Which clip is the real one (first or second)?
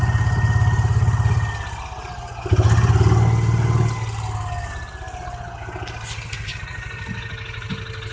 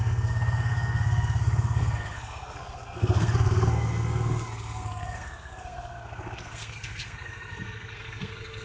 first